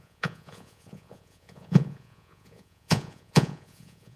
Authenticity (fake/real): fake